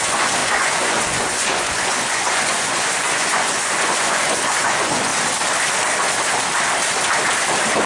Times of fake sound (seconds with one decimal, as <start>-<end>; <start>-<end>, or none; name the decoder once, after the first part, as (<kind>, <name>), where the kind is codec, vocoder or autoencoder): 0.0-5.1 (vocoder, Vocos)